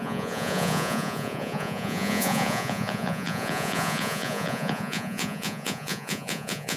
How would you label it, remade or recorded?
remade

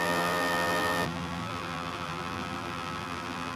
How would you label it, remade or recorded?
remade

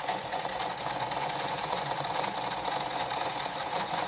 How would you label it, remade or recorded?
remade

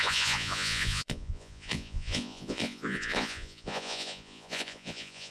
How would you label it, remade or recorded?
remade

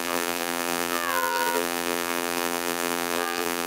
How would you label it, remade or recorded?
remade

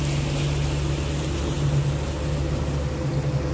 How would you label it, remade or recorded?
recorded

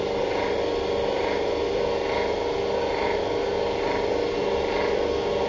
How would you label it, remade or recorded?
recorded